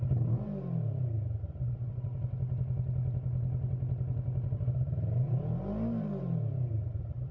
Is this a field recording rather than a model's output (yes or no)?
yes